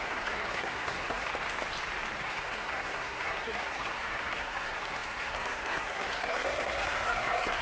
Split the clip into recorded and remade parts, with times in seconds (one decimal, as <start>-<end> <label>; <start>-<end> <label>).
0.0-1.3 remade; 1.3-2.2 recorded; 2.2-7.6 remade

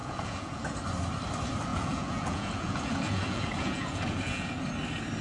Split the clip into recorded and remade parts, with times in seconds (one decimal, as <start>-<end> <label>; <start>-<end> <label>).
0.0-0.6 remade; 0.6-1.7 recorded; 1.7-4.5 remade; 4.5-5.2 recorded

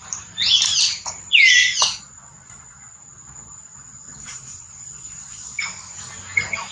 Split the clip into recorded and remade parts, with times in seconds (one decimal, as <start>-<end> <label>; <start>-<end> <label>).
0.0-1.6 recorded; 1.6-5.6 remade; 5.6-6.7 recorded

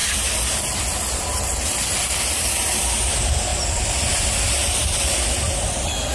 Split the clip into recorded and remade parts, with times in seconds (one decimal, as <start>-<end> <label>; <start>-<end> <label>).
0.0-1.4 remade; 1.4-3.5 recorded; 3.5-4.2 remade; 4.2-6.1 recorded

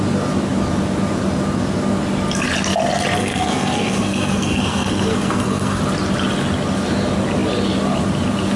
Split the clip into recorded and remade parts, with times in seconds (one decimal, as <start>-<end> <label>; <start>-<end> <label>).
0.0-3.2 recorded; 3.2-5.8 remade; 5.8-8.6 recorded

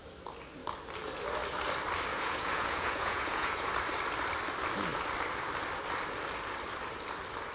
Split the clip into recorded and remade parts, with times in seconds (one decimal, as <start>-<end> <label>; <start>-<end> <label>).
0.0-2.1 recorded; 2.1-3.7 remade; 3.7-7.5 recorded

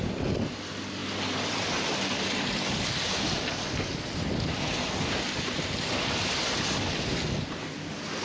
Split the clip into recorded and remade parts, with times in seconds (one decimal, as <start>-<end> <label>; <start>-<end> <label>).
0.0-8.2 recorded